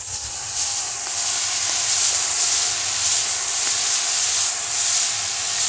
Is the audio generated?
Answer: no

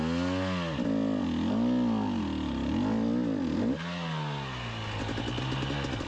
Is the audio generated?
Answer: no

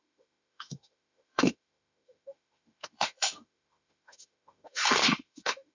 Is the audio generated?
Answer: yes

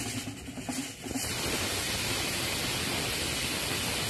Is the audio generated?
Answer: no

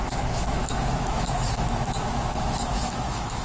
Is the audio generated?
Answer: yes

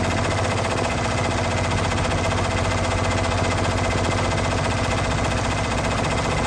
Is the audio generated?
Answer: no